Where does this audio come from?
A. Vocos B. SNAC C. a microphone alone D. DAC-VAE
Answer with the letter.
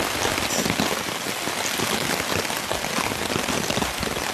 C